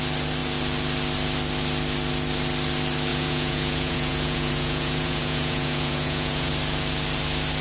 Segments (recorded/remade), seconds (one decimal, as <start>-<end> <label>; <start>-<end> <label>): 0.0-3.1 recorded; 3.1-6.5 remade; 6.5-7.6 recorded